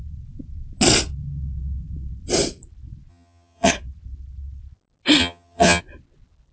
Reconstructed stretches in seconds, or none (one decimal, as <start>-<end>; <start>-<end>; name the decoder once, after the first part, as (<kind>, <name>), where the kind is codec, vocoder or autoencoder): 3.1-3.7 (vocoder, HiFi-GAN); 5.2-5.8